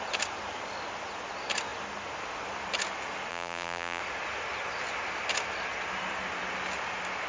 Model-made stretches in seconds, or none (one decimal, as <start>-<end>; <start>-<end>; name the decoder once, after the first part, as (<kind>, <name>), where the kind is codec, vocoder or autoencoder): 3.3-4.0 (vocoder, BigVGAN v2)